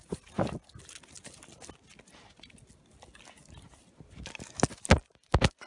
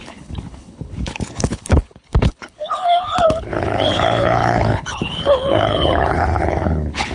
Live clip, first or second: first